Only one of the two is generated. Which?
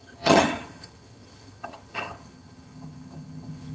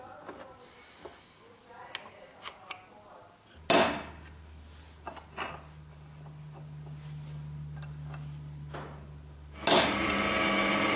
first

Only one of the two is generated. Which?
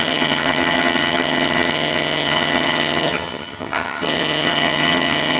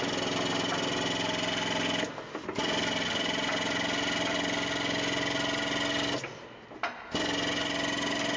first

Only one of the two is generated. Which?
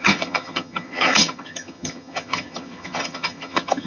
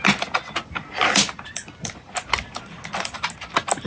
first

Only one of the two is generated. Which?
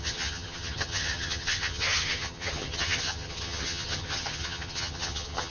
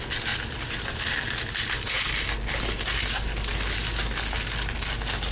first